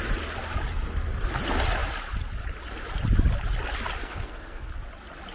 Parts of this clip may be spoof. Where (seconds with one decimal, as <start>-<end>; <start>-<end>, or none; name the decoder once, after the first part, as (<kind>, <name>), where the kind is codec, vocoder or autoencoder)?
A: 4.0-4.7 (codec, SNAC)